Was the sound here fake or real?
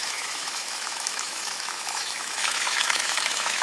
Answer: fake